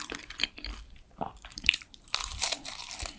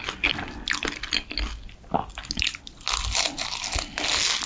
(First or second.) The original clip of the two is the second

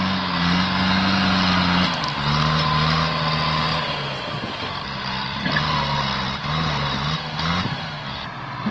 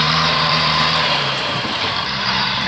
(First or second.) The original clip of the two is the first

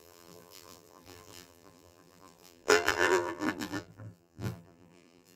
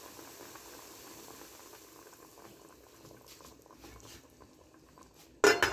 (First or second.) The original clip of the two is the second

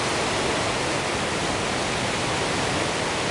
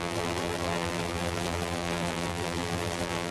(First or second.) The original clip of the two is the first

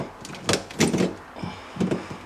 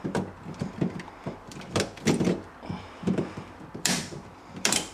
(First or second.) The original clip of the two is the first